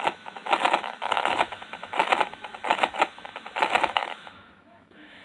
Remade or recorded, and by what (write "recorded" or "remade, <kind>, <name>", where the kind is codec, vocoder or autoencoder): remade, autoencoder, DAC-VAE